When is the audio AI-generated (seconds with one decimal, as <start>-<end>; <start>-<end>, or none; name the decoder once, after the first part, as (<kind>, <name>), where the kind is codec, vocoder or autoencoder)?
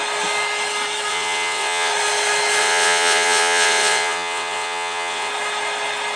1.1-1.9 (vocoder, WaveNeXt); 2.6-5.3